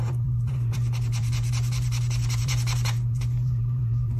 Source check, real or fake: fake